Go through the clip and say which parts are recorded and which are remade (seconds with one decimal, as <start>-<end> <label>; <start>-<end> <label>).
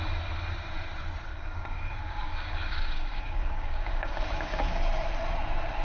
0.0-1.3 recorded; 1.3-4.8 remade; 4.8-5.8 recorded